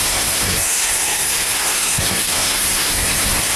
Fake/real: fake